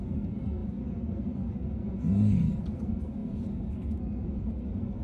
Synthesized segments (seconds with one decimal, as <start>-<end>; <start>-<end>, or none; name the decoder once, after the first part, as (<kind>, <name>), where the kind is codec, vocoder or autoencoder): 0.0-5.0 (codec, SNAC)